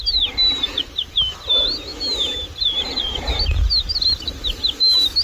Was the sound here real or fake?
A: real